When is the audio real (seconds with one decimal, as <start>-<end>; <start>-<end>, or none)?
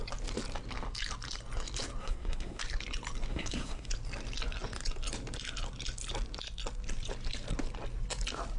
0.0-2.0; 2.6-3.3; 3.9-8.6